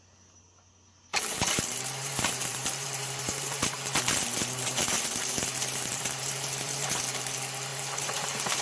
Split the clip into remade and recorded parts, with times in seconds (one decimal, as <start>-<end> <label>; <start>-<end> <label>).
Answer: 0.0-1.1 recorded; 1.1-3.6 remade; 3.6-4.3 recorded; 4.3-7.0 remade; 7.0-7.7 recorded; 7.7-8.6 remade